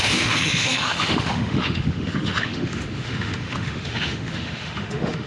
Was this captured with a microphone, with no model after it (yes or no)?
no